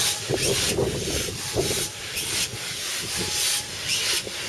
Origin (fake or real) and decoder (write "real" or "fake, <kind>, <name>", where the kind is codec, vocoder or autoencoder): real